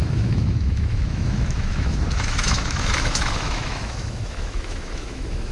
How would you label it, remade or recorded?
remade